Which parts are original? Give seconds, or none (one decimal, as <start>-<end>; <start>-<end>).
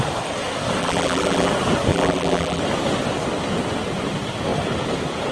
0.0-0.8; 1.5-1.9; 2.6-5.3